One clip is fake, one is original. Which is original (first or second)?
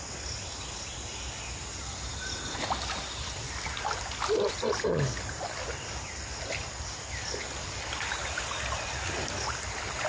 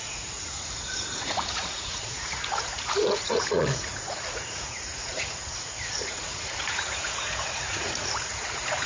first